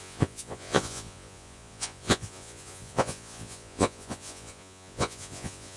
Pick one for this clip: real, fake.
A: fake